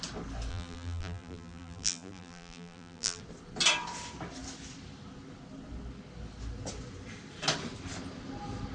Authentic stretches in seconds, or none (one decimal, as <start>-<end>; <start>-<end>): 0.0-0.5; 3.2-8.7